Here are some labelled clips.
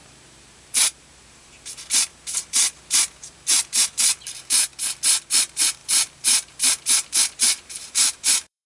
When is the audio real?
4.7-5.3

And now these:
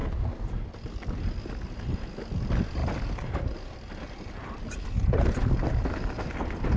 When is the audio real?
0.0-6.8

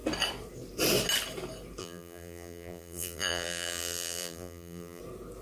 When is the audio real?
0.0-1.8; 5.0-5.4